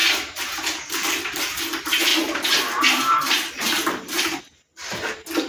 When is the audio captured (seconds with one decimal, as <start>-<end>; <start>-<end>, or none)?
1.6-2.1; 4.4-5.5